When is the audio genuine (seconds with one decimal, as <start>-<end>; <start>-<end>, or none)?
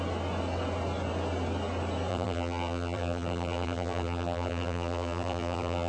0.0-2.1